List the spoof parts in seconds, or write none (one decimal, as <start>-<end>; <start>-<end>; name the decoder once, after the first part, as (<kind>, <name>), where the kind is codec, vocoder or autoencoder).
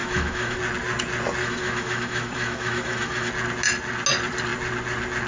0.0-0.6 (autoencoder, DAC-VAE); 1.4-3.3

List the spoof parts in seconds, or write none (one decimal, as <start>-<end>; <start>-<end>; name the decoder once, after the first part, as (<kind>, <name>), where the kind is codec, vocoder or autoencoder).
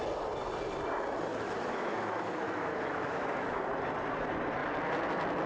1.3-3.6 (autoencoder, DAC-VAE)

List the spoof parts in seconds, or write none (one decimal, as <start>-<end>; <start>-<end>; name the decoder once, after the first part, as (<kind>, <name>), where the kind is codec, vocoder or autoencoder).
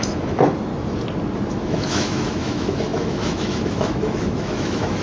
0.0-0.7 (autoencoder, DAC-VAE); 1.5-5.0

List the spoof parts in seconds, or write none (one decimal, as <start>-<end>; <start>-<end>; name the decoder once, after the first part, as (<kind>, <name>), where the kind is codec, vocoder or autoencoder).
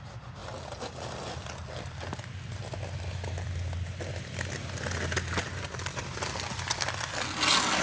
none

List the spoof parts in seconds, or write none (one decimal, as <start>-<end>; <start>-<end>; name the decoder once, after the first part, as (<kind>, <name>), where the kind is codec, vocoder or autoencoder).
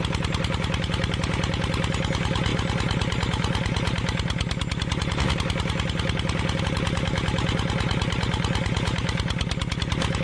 none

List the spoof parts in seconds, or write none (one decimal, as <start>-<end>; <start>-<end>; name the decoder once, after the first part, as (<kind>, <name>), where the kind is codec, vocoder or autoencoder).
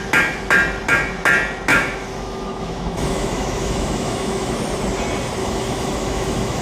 1.7-4.5 (autoencoder, DAC-VAE); 5.4-6.6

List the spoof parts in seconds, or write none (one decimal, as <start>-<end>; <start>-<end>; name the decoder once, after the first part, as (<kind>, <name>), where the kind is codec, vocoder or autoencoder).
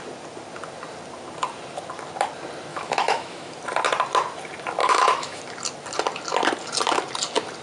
2.7-3.5 (autoencoder, DAC-VAE); 4.8-5.4